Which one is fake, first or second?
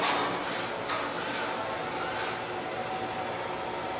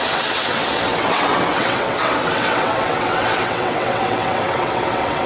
second